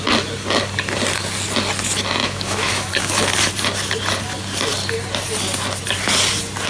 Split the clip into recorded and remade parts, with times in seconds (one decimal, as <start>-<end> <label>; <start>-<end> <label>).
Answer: 0.0-2.2 recorded; 2.2-2.9 remade; 2.9-6.7 recorded